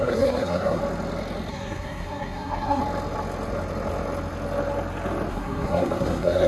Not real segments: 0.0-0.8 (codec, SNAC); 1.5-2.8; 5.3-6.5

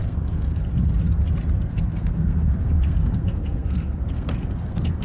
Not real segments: 0.0-0.6 (codec, SNAC); 1.7-5.0

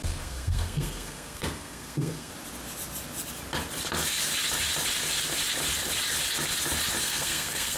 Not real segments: 0.0-2.3 (codec, SNAC); 7.0-7.8

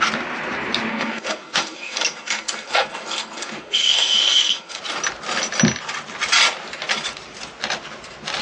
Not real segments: 0.9-4.8 (codec, SNAC)

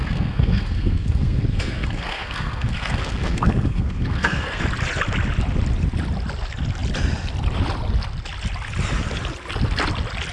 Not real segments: 0.0-4.6 (codec, SNAC)